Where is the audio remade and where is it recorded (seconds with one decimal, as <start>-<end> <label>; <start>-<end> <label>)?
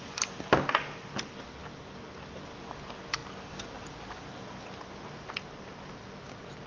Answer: 0.0-6.7 recorded